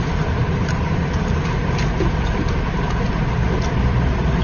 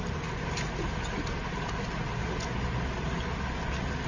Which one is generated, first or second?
first